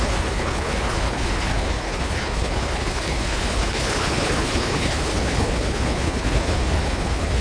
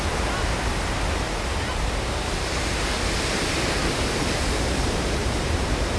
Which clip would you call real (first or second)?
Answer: second